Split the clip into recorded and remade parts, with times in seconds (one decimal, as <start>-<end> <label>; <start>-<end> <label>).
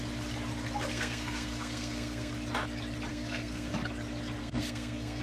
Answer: 0.0-0.9 recorded; 0.9-2.3 remade; 2.3-3.1 recorded; 3.1-3.7 remade; 3.7-4.4 recorded; 4.4-5.2 remade